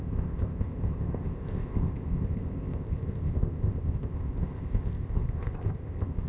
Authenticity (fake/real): fake